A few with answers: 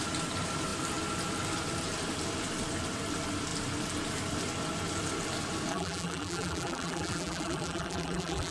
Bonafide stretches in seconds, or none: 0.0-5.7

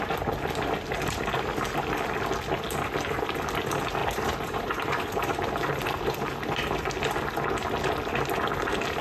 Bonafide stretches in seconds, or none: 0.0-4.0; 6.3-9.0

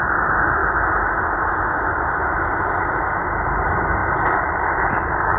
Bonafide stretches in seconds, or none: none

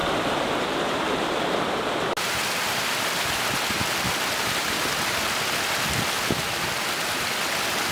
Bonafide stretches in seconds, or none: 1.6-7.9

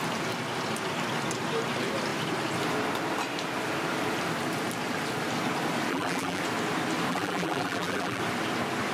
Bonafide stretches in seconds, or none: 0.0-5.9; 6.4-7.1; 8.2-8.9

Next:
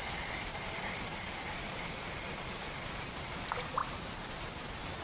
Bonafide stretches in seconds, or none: 0.0-0.5; 3.1-3.8; 4.5-5.0

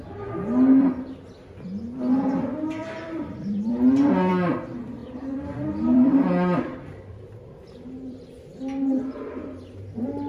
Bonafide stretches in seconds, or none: 0.0-2.8; 4.3-5.0; 8.6-10.3

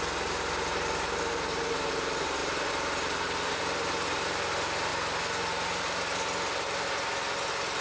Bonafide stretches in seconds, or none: 0.0-2.4; 3.6-7.8